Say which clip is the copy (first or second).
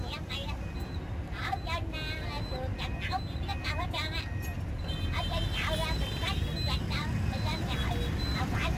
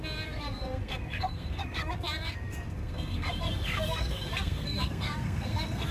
second